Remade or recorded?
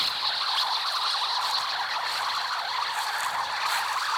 recorded